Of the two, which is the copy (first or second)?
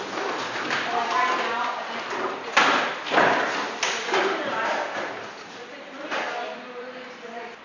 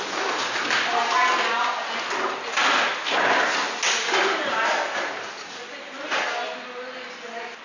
first